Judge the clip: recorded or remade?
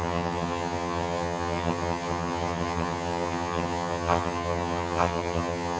remade